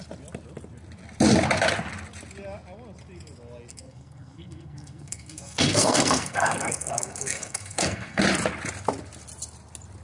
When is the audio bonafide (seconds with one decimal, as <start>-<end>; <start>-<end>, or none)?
0.0-3.7; 8.2-10.0